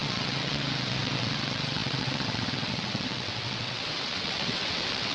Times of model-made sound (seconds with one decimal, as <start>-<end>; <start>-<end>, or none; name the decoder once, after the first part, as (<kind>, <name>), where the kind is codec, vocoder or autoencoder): 0.0-5.1 (vocoder, WaveNeXt)